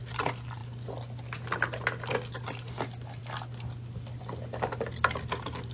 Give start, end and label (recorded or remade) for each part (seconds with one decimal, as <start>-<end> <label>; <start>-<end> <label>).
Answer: 0.0-5.7 recorded